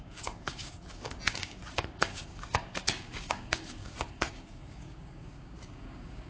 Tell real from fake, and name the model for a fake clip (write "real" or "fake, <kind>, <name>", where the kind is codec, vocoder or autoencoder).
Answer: fake, codec, DAC